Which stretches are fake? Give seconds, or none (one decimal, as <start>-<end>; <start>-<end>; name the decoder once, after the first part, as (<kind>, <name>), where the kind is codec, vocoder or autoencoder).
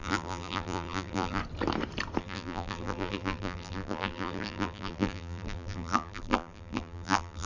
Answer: 0.0-1.4 (vocoder, BigVGAN v2); 2.2-7.5